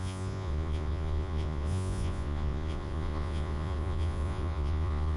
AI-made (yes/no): yes